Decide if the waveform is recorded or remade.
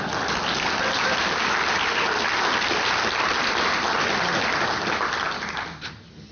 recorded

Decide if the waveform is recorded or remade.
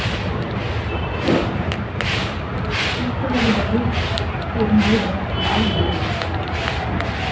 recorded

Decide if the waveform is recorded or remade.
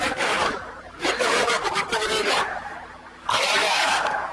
remade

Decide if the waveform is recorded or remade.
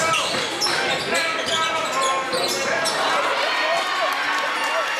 recorded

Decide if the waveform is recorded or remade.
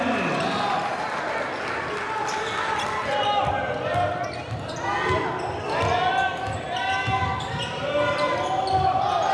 recorded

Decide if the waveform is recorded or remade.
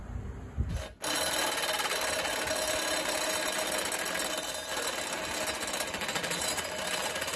recorded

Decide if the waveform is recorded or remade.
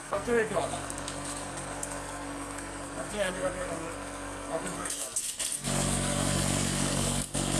remade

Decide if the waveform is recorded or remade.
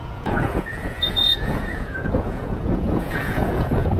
remade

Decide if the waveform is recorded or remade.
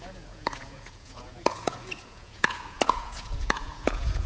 remade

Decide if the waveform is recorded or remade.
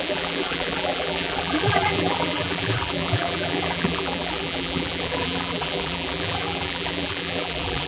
remade